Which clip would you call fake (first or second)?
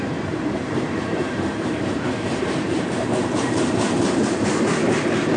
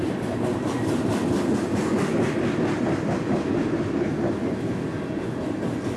first